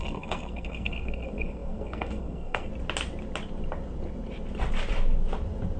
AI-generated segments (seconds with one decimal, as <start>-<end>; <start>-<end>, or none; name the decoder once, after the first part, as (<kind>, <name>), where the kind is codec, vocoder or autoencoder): 0.0-2.7 (codec, SNAC)